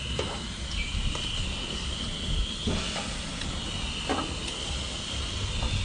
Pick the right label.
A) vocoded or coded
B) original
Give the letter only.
B